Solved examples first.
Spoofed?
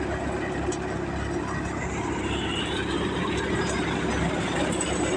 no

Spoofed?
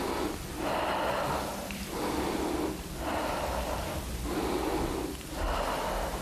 no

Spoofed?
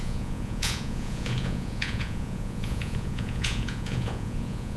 yes